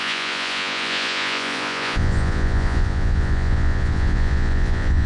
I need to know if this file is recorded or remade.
remade